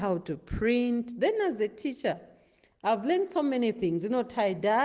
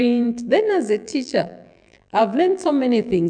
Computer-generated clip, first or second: second